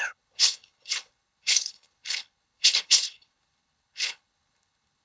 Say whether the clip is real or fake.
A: fake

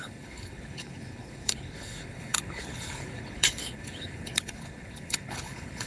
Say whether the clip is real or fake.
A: fake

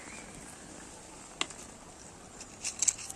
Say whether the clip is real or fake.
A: real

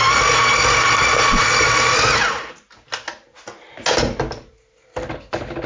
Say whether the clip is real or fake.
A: real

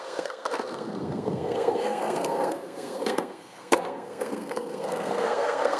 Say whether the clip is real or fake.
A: fake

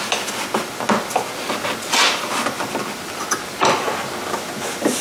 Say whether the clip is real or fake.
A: real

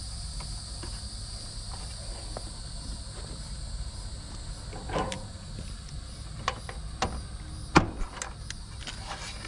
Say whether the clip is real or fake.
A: real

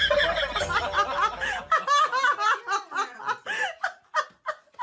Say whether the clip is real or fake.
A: real